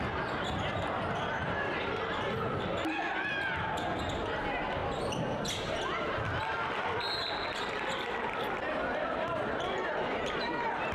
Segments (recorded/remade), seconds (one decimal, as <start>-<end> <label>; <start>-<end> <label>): 0.0-4.8 recorded; 4.8-5.7 remade; 5.7-6.3 recorded; 6.3-10.5 remade; 10.5-10.9 recorded